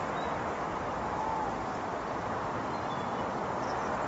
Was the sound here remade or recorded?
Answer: recorded